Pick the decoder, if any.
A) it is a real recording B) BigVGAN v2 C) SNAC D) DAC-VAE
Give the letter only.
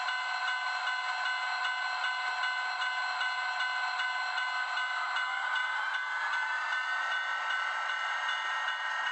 A